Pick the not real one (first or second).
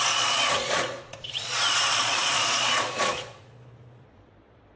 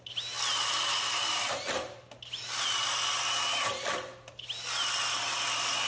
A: first